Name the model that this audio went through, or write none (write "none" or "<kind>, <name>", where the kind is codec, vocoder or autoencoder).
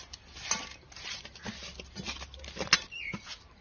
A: none